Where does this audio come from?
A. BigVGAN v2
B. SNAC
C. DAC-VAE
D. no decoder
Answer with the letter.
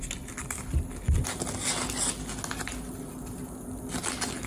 D